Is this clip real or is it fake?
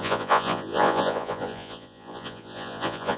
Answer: fake